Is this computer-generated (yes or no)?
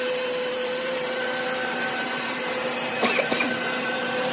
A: yes